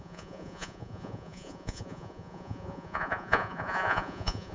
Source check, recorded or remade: remade